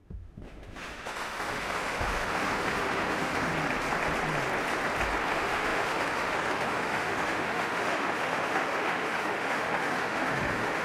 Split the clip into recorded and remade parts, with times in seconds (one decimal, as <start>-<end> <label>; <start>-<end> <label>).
0.0-3.5 remade; 3.5-5.3 recorded; 5.3-10.8 remade